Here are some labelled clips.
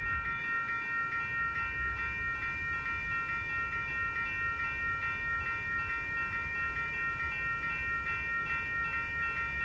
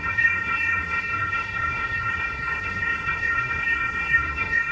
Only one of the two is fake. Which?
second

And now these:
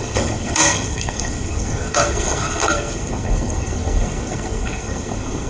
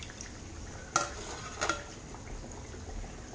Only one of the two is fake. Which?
first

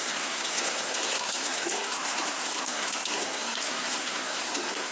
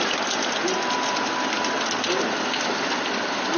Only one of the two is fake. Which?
first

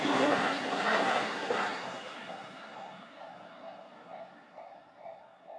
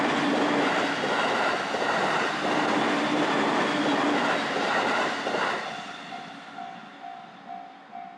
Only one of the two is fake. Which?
first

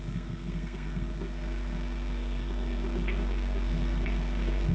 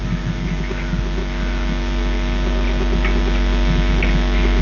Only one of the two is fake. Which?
first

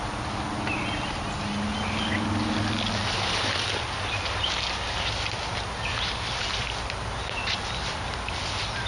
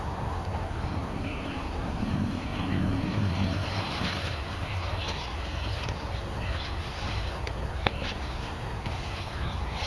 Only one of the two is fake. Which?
second